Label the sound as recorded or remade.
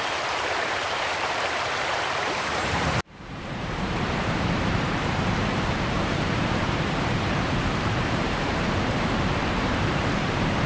remade